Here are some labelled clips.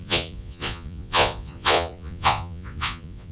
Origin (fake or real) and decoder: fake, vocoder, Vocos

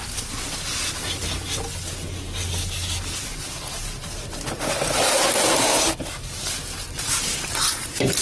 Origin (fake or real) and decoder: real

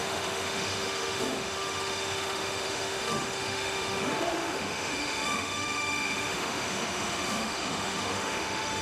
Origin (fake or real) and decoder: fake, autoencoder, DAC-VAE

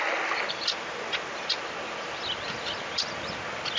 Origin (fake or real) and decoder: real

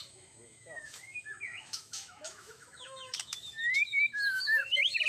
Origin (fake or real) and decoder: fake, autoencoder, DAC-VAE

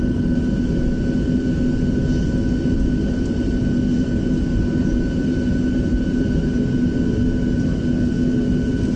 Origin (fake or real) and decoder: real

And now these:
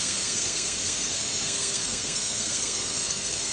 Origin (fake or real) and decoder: fake, codec, SNAC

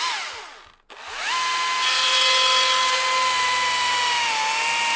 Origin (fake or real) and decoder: real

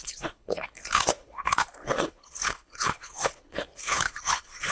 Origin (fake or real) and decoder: fake, codec, HILCodec